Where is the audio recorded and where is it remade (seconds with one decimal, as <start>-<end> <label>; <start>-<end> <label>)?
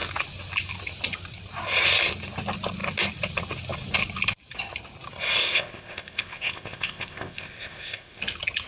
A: 0.0-5.4 recorded; 5.4-8.2 remade; 8.2-8.7 recorded